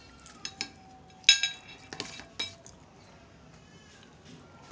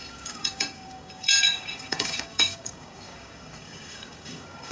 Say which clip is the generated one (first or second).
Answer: second